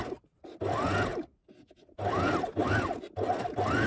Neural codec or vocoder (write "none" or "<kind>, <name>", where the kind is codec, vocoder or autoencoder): none